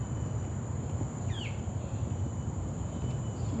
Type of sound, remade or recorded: recorded